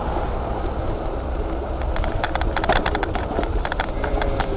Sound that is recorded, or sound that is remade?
recorded